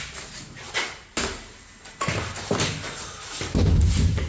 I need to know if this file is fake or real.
real